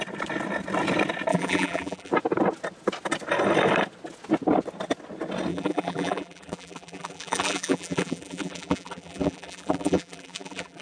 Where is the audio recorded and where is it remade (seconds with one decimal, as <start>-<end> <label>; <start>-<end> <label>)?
0.0-1.3 recorded; 1.3-2.1 remade; 2.1-5.5 recorded; 5.5-10.8 remade